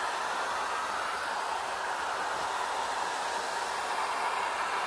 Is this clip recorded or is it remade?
recorded